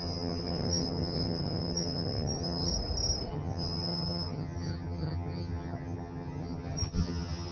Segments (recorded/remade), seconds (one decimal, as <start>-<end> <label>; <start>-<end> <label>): 0.0-2.7 remade; 2.7-3.3 recorded; 3.3-7.5 remade